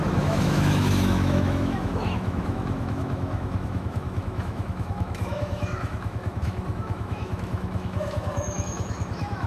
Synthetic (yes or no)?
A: yes